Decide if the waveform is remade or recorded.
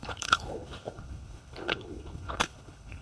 remade